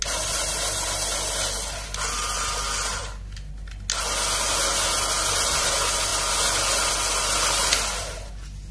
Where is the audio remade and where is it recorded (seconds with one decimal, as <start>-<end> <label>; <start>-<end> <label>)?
0.0-8.7 recorded